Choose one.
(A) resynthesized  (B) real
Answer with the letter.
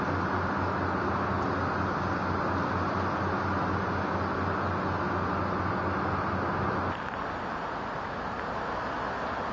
B